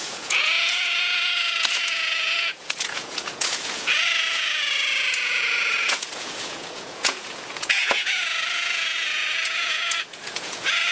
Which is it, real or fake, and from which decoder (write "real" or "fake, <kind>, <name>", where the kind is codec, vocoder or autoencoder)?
fake, vocoder, Vocos